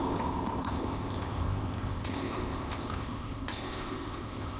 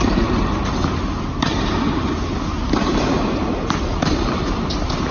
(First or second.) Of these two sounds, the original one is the second